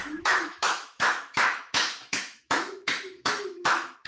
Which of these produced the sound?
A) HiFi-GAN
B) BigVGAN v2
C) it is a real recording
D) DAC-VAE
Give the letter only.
D